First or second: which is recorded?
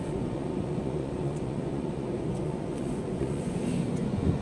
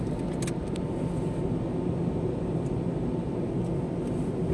second